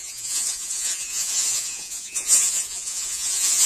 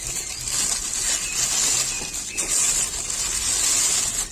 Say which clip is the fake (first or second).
first